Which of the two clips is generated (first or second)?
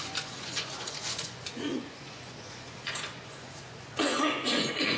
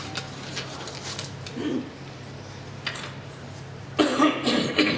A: first